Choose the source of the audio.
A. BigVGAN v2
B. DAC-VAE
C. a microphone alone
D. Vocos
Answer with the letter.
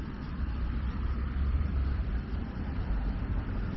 A